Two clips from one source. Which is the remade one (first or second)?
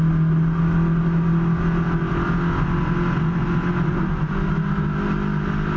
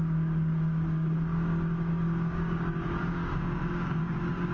second